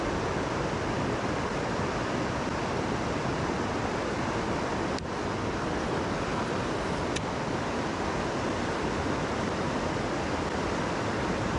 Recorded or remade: recorded